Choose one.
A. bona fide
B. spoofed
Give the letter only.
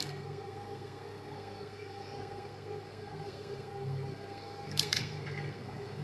B